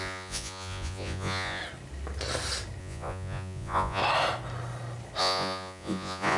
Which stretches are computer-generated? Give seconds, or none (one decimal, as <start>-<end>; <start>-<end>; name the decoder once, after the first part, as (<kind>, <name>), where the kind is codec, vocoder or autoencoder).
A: 0.0-1.6 (vocoder, Vocos); 2.8-4.0; 5.2-6.4